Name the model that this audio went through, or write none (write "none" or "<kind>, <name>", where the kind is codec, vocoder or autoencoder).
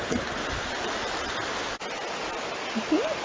none